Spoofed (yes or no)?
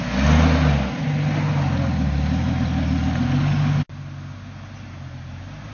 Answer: no